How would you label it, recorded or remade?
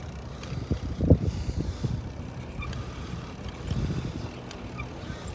recorded